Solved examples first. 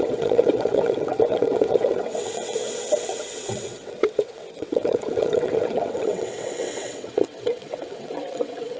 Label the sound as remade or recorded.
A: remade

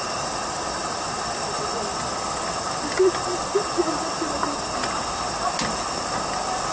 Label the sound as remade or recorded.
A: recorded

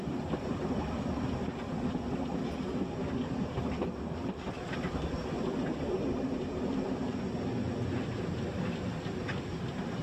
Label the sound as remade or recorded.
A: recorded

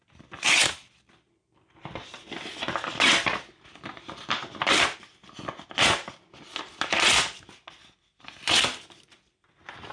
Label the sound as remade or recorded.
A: recorded